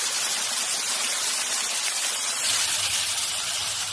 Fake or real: fake